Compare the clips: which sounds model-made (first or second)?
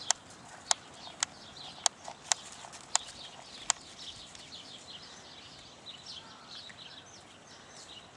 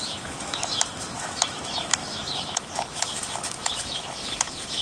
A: second